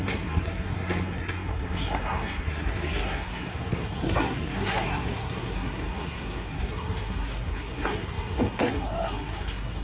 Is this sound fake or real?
fake